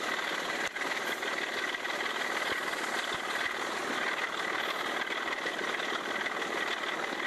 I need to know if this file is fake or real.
real